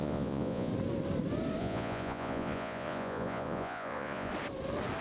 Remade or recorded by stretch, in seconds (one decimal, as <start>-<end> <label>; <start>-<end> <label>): 0.0-0.7 remade; 0.7-1.6 recorded; 1.6-4.3 remade; 4.3-5.0 recorded